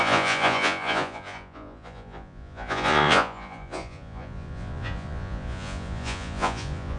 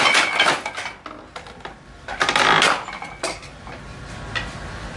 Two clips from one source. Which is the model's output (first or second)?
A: first